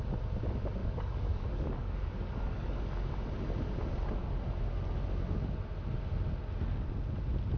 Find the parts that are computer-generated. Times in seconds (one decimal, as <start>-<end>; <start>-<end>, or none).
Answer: 0.8-3.1